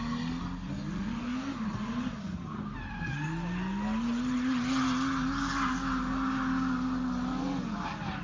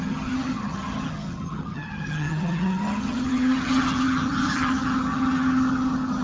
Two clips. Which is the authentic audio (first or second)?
first